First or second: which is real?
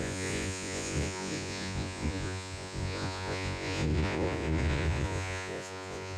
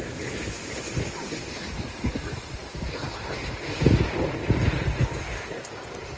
second